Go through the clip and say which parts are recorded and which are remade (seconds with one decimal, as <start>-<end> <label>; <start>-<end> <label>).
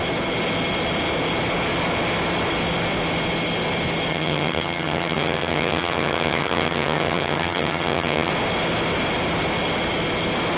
0.0-4.1 recorded; 4.1-8.3 remade; 8.3-10.6 recorded